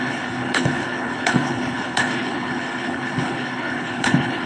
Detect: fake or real fake